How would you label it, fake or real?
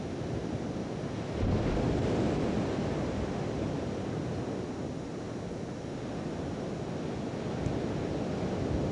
real